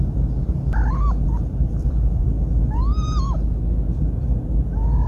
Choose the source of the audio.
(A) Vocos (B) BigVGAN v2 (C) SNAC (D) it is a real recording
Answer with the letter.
D